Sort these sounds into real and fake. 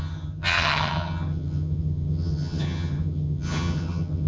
fake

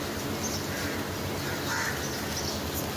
real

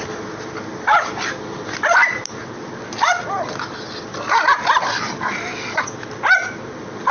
real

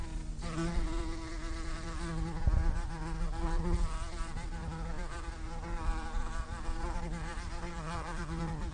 fake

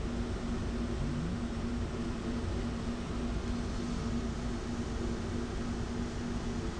real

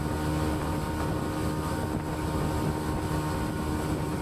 real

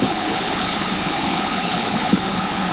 fake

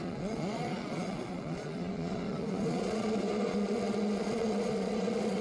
fake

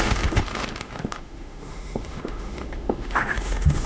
fake